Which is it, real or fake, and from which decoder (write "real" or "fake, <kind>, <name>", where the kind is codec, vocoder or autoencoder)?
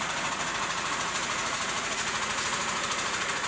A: fake, vocoder, Vocos